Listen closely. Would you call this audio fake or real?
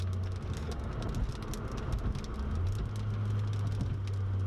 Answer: real